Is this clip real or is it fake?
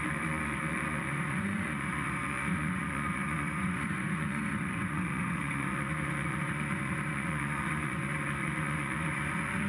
fake